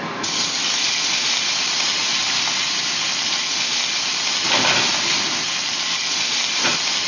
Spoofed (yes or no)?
no